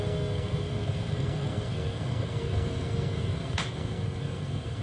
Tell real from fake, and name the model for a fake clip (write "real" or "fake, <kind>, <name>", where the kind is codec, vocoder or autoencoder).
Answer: fake, codec, SNAC